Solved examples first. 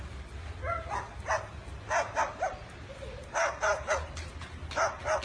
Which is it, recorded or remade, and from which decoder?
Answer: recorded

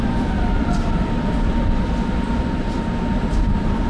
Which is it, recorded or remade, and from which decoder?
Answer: remade, vocoder, BigVGAN v2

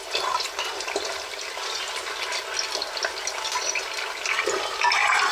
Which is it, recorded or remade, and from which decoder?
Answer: recorded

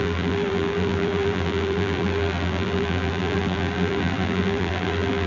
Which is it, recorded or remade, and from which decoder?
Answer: remade, vocoder, BigVGAN v2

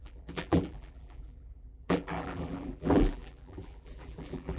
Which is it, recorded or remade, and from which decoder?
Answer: remade, vocoder, BigVGAN v2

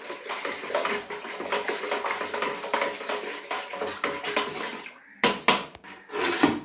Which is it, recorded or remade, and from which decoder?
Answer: recorded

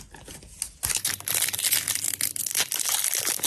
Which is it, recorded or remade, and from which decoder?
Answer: recorded